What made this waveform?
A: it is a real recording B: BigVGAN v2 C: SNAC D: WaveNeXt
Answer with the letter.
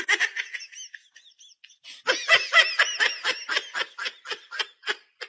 A